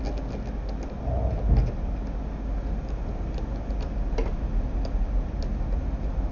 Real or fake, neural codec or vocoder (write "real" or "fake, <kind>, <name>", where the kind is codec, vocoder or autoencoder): real